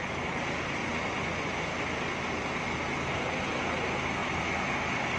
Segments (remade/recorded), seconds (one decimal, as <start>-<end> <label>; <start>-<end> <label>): 0.0-0.8 recorded; 0.8-1.5 remade; 1.5-5.2 recorded